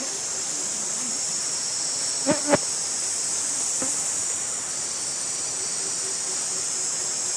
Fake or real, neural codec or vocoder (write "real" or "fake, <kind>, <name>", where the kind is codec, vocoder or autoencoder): real